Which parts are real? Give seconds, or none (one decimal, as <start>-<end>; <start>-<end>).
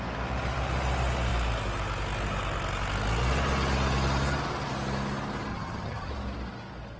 0.0-5.5; 6.1-7.0